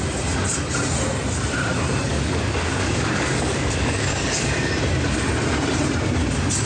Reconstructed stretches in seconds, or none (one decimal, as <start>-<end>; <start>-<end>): 2.1-4.7